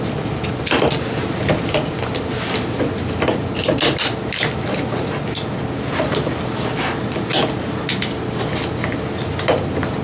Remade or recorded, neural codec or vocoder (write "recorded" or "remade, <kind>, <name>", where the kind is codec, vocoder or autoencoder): recorded